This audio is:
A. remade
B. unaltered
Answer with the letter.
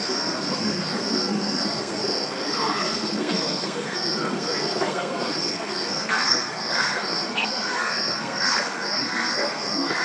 A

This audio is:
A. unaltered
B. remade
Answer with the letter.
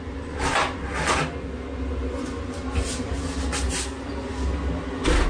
A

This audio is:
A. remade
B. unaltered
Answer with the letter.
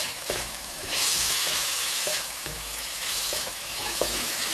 A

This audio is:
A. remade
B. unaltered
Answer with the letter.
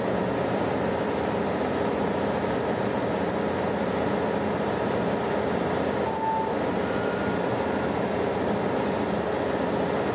B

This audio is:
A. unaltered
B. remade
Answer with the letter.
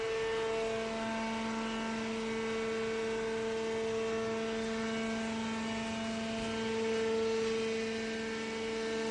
A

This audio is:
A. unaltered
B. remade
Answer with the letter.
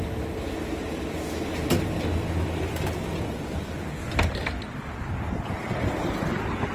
A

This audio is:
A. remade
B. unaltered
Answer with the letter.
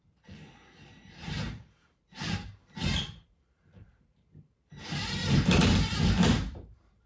A